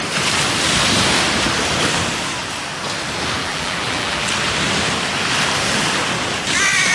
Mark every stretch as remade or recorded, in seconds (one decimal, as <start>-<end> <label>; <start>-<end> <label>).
0.0-3.4 recorded; 3.4-4.3 remade; 4.3-6.9 recorded

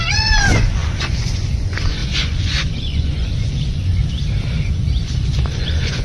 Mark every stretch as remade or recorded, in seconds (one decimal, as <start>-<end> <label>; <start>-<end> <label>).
0.0-4.0 remade; 4.0-4.7 recorded; 4.7-6.0 remade

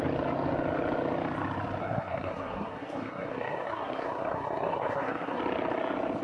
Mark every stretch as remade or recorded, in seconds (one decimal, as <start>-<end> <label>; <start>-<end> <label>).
0.0-1.8 recorded; 1.8-5.4 remade; 5.4-6.2 recorded

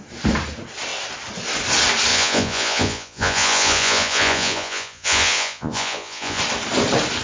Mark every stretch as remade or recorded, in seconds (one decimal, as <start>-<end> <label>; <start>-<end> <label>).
0.0-2.1 recorded; 2.1-6.4 remade; 6.4-7.2 recorded